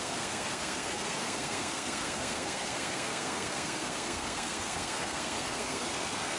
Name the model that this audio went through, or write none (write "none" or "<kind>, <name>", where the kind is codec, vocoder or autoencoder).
codec, SNAC